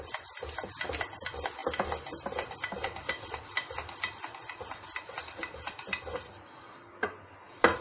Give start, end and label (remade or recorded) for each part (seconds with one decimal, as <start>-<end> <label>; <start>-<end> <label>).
0.0-7.8 recorded